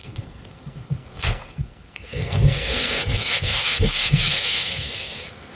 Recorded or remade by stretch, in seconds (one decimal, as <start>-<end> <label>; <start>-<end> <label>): 0.0-5.5 remade